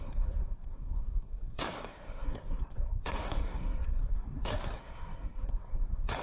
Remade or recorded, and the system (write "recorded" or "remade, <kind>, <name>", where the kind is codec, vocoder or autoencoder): remade, codec, SNAC